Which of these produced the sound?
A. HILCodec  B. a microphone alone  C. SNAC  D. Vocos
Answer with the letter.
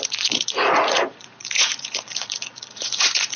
D